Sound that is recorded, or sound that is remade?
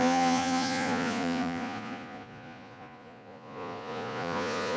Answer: remade